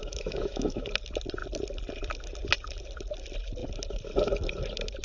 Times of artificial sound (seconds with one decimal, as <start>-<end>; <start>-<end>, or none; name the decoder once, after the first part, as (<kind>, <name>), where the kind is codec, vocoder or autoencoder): 0.0-0.9 (autoencoder, DAC-VAE)

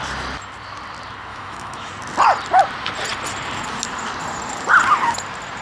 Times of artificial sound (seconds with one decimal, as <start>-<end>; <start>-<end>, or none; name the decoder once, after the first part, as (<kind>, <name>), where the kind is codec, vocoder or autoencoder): 1.3-1.9 (autoencoder, DAC-VAE)

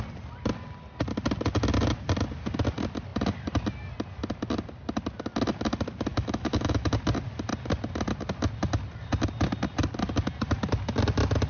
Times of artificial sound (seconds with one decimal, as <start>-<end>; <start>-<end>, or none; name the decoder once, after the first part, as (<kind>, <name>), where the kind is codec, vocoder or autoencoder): 6.1-6.9 (autoencoder, DAC-VAE)

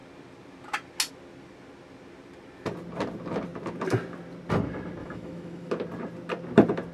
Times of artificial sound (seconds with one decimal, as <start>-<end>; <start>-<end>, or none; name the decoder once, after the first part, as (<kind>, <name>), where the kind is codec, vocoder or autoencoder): 5.0-5.7 (autoencoder, DAC-VAE)

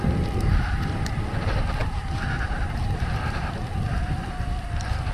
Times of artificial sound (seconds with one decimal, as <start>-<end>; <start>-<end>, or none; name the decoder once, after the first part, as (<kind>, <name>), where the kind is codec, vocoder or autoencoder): none

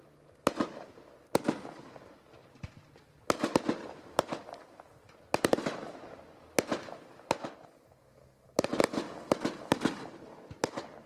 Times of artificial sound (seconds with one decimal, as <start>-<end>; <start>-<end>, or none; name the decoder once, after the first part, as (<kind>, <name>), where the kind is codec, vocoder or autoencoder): none